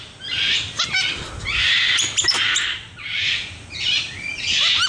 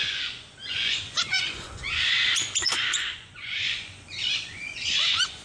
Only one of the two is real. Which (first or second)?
first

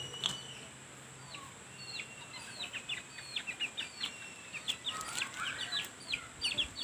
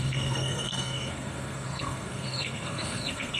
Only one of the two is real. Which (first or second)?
first